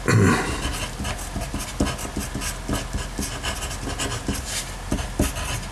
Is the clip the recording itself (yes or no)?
yes